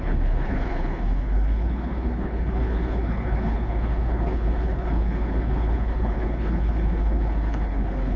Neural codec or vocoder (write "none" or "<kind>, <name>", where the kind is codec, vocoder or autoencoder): codec, HILCodec